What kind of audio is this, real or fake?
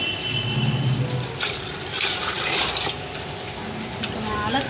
real